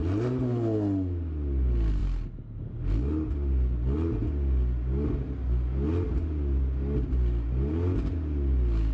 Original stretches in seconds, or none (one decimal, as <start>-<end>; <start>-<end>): 0.0-8.9